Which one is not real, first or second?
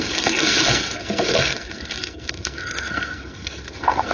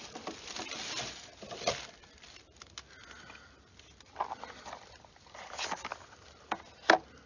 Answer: first